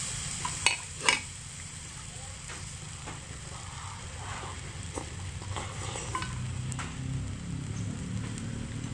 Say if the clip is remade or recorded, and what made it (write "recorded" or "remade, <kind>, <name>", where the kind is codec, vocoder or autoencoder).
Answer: recorded